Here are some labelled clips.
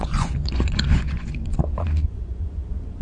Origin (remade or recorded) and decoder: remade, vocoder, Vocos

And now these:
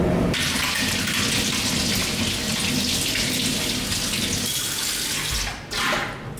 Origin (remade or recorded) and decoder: recorded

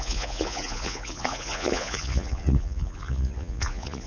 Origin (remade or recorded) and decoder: remade, vocoder, Vocos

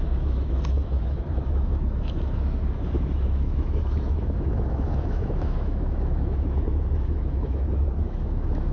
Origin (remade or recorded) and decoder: remade, autoencoder, DAC-VAE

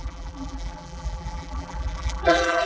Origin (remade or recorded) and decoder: remade, vocoder, BigVGAN v2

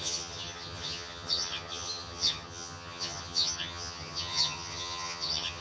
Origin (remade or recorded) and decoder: remade, vocoder, HiFi-GAN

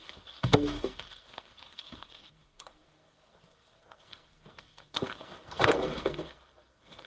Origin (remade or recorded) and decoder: remade, codec, SNAC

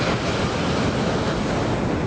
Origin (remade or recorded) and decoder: recorded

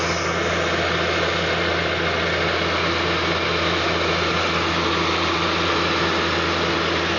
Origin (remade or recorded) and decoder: recorded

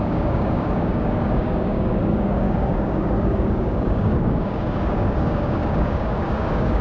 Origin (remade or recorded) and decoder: remade, codec, DAC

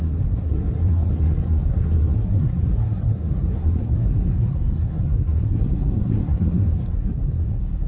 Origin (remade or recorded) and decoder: remade, codec, SNAC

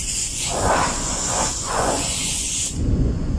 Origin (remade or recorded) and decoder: remade, vocoder, Vocos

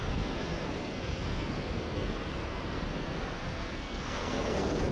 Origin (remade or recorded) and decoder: remade, codec, SNAC